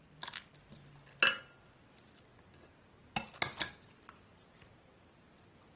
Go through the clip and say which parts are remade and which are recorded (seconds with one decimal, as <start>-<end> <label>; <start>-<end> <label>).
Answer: 0.0-5.8 recorded